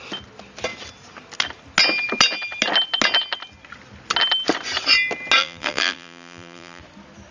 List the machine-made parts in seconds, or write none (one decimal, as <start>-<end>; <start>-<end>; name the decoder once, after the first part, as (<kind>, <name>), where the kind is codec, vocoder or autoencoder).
5.4-6.8 (vocoder, BigVGAN v2)